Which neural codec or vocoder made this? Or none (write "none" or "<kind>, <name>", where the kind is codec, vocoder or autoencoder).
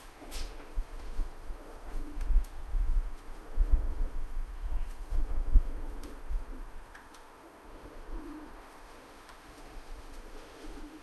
autoencoder, DAC-VAE